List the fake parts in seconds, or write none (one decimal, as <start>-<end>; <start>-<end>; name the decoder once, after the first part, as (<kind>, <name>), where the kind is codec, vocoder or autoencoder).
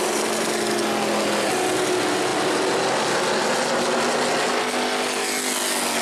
none